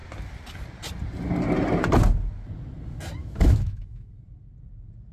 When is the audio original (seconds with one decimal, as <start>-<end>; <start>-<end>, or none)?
0.0-3.2; 4.1-5.1